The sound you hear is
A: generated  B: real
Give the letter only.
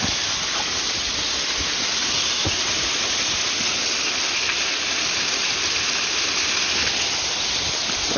B